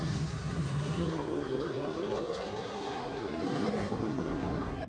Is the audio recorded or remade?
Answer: remade